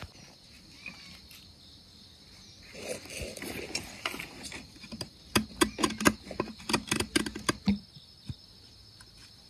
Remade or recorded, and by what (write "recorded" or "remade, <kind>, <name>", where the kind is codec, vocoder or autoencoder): recorded